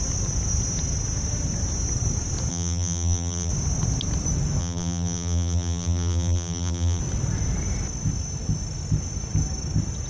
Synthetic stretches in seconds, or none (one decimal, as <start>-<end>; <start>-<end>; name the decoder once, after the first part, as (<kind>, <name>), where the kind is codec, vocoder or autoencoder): 2.5-3.5 (vocoder, BigVGAN v2); 4.6-7.0